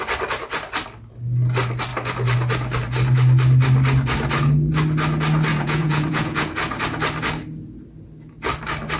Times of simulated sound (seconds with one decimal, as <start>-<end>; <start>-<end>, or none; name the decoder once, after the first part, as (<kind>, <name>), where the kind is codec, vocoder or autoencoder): 5.5-6.5 (vocoder, Vocos)